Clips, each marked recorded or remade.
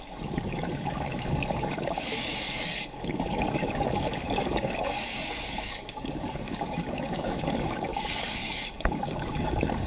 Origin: remade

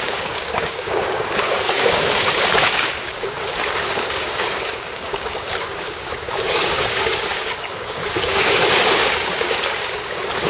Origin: remade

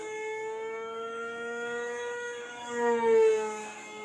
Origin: remade